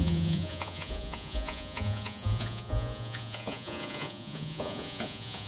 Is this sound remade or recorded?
remade